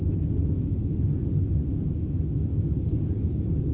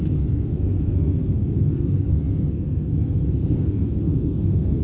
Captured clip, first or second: first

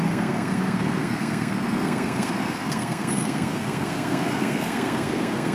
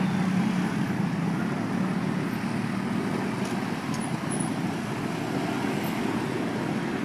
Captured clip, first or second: second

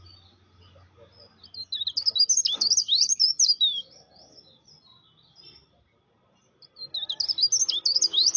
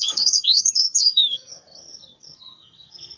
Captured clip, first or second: first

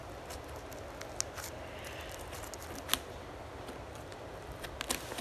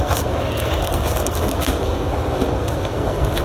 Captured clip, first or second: first